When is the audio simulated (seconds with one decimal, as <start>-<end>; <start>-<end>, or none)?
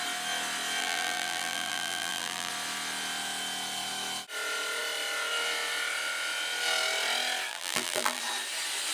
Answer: 0.8-2.5; 7.5-8.2